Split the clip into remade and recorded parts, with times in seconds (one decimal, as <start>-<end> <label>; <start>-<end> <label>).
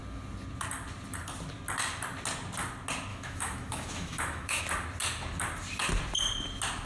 0.0-3.1 recorded; 3.1-4.6 remade; 4.6-6.9 recorded